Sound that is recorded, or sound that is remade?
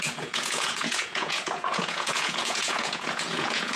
remade